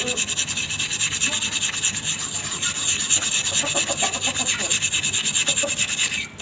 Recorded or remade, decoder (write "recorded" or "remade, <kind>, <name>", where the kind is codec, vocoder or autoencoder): recorded